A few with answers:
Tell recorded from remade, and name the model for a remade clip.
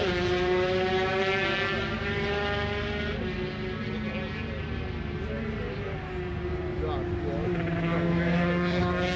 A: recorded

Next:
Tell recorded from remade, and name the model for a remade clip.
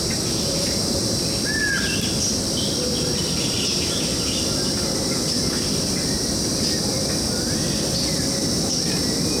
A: recorded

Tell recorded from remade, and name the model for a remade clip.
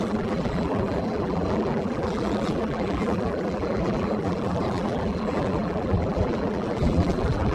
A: remade, vocoder, BigVGAN v2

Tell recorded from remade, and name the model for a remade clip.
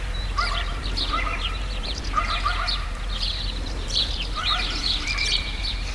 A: remade, vocoder, BigVGAN v2